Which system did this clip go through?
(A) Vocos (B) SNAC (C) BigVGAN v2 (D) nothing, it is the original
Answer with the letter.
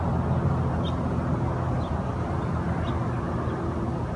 D